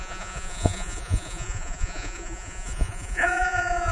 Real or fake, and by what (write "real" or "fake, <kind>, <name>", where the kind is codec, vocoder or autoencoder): fake, vocoder, Vocos